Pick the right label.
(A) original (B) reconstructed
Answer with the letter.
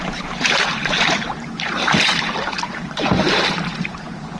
B